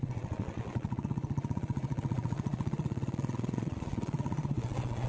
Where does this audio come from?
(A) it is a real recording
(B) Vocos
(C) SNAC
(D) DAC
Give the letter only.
B